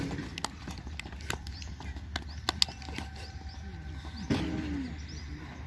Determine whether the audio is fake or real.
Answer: real